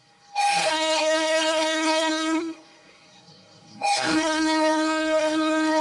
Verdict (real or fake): fake